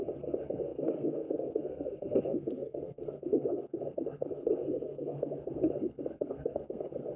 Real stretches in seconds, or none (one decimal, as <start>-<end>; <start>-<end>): none

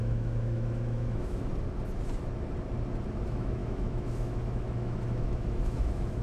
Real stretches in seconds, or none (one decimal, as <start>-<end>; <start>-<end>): 1.5-3.2

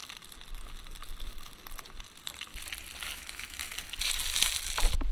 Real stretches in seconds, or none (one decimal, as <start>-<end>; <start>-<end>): 0.0-3.1; 3.6-5.1

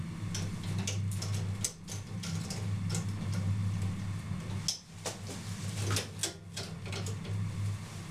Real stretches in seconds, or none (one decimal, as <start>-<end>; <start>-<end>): 0.0-8.1

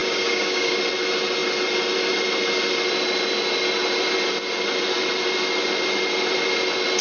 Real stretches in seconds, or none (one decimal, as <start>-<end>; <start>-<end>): 0.8-7.0

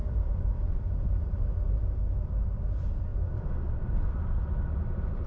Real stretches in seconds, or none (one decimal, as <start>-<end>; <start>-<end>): 1.8-5.3